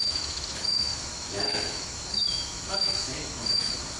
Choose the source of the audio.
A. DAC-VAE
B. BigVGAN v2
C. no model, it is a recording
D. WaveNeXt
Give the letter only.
A